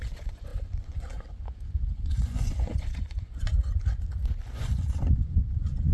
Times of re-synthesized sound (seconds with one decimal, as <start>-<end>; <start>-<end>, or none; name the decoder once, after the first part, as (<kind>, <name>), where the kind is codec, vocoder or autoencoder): 0.0-5.9 (vocoder, Vocos)